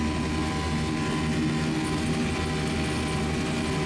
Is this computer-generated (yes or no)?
no